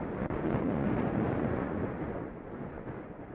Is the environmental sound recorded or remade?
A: remade